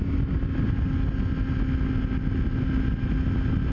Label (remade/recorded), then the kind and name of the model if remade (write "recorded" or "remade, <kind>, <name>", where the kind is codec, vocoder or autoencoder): recorded